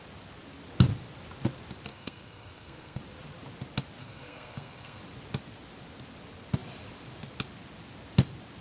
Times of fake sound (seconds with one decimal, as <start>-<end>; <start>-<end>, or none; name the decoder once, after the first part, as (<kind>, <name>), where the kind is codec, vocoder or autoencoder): 1.9-3.0 (codec, SNAC); 4.0-5.0